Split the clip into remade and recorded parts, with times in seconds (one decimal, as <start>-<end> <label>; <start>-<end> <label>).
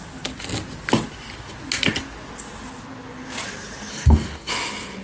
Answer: 0.0-3.9 recorded; 3.9-4.5 remade; 4.5-5.0 recorded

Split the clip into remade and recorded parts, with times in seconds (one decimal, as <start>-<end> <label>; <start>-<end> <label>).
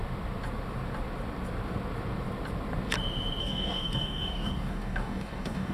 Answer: 0.0-3.4 recorded; 3.4-5.7 remade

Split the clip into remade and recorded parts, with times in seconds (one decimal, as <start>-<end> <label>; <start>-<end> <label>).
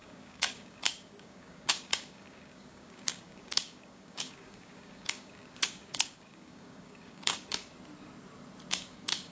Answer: 0.0-7.7 remade; 7.7-8.7 recorded; 8.7-9.3 remade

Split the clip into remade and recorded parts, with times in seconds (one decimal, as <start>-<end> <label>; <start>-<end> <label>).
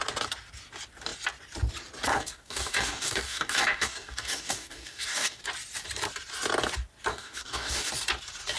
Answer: 0.0-2.1 recorded; 2.1-5.4 remade; 5.4-7.1 recorded; 7.1-7.9 remade; 7.9-8.6 recorded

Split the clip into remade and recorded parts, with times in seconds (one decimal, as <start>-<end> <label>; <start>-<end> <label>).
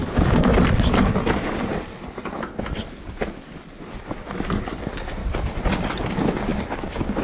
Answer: 0.0-0.5 remade; 0.5-4.8 recorded; 4.8-5.2 remade; 5.2-6.1 recorded; 6.1-7.2 remade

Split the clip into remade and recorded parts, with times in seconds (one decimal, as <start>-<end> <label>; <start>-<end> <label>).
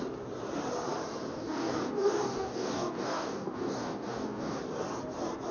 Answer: 0.0-1.3 recorded; 1.3-4.6 remade; 4.6-5.5 recorded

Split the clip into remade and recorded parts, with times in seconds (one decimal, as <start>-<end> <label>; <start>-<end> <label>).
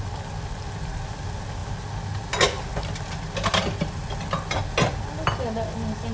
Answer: 0.0-6.1 recorded